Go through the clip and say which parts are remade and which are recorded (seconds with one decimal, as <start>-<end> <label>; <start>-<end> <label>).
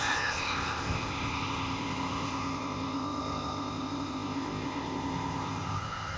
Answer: 0.0-6.2 remade